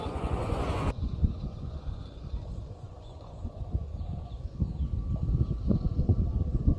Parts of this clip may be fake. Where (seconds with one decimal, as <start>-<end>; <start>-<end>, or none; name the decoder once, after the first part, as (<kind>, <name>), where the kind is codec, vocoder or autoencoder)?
0.0-4.6 (vocoder, Vocos); 5.7-6.8